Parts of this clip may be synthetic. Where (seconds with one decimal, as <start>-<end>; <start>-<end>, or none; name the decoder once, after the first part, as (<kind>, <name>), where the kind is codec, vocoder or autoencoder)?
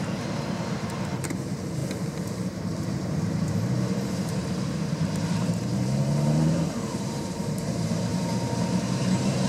0.0-1.8 (vocoder, BigVGAN v2); 2.4-9.5